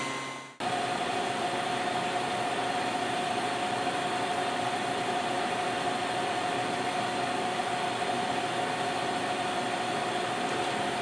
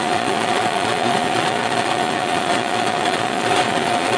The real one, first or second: first